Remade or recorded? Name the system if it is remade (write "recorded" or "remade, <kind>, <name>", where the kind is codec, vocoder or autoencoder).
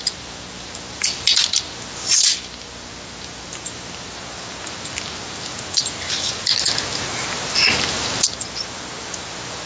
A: recorded